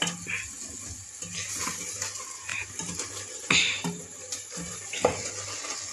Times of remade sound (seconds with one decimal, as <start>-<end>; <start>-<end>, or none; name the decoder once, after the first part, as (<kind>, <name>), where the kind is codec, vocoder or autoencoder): 2.5-5.3 (vocoder, BigVGAN v2)